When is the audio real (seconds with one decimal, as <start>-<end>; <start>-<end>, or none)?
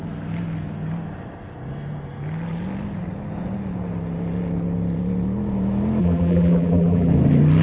0.0-6.0; 7.1-7.6